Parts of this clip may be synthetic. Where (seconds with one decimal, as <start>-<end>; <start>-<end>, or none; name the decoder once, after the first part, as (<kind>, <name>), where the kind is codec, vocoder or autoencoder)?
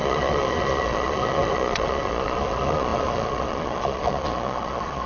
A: 0.0-5.1 (vocoder, Vocos)